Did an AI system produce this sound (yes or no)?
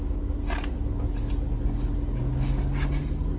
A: no